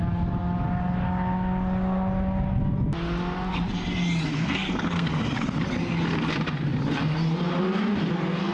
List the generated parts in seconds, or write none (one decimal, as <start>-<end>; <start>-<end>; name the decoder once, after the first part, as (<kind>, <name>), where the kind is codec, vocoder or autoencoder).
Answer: 4.3-5.1 (codec, SNAC)